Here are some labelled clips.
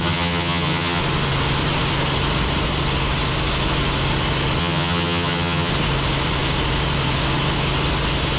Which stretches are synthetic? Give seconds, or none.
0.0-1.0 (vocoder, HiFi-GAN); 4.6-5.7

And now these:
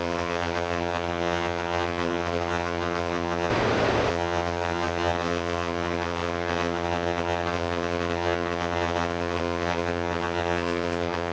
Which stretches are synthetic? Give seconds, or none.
0.0-3.5 (vocoder, HiFi-GAN); 4.1-11.3

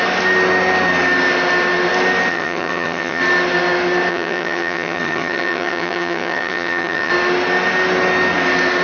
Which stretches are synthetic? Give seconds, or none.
2.3-3.2 (vocoder, HiFi-GAN); 4.1-7.1

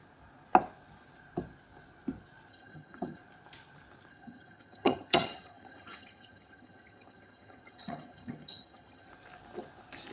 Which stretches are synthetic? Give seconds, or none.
2.5-3.2 (vocoder, HiFi-GAN); 4.1-9.1

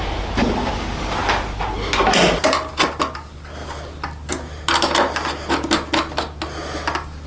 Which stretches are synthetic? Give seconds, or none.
none

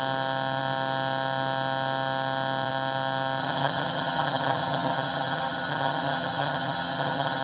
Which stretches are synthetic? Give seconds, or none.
3.4-7.4 (vocoder, HiFi-GAN)

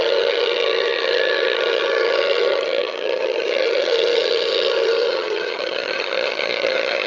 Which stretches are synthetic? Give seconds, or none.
0.0-7.1 (vocoder, HiFi-GAN)

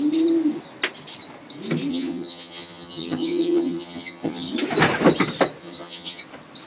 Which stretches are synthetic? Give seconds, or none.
1.9-4.5 (vocoder, HiFi-GAN); 5.6-6.2